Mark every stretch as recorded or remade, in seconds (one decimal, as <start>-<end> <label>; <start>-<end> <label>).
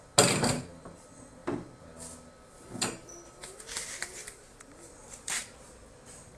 0.0-4.2 recorded; 4.2-5.6 remade; 5.6-6.4 recorded